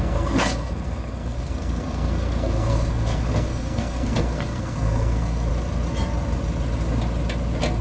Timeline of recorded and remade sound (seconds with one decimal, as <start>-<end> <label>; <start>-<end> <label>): 0.0-5.5 remade; 5.5-7.8 recorded